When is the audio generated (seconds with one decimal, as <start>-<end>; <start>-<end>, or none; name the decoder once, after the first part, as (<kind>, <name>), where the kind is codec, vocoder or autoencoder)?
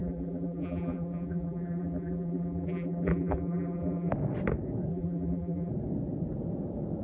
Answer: 0.0-4.1 (vocoder, BigVGAN v2); 4.9-5.7